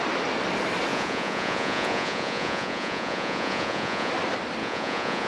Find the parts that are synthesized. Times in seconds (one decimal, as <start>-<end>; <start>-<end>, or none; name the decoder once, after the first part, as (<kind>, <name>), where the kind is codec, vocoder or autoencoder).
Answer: 0.9-4.1 (vocoder, Vocos); 4.6-5.3